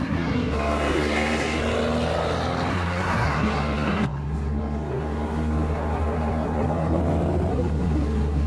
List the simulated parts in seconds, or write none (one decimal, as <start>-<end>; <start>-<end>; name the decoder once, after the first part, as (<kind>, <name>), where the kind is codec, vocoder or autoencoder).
0.0-1.6 (codec, SNAC); 2.7-7.0; 7.5-8.5